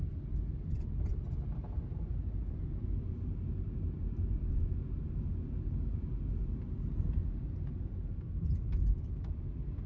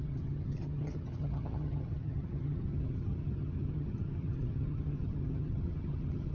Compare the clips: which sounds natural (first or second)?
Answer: first